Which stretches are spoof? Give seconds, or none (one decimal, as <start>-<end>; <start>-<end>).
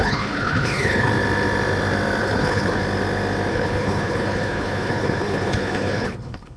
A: 0.0-1.1; 2.2-2.8; 3.5-6.6